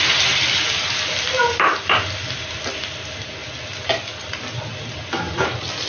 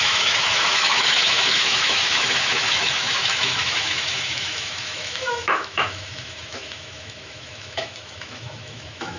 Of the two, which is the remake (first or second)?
second